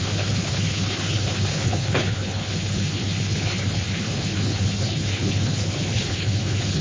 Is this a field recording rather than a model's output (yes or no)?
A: no